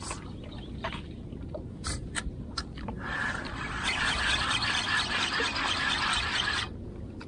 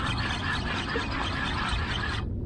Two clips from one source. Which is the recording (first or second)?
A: second